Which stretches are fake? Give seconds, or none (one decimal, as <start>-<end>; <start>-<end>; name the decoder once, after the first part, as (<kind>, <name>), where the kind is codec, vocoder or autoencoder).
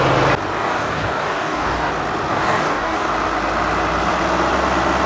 0.6-1.9 (codec, DAC); 2.3-3.1